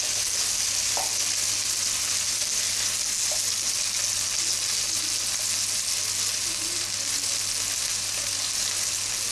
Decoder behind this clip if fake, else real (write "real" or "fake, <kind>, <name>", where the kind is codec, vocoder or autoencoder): real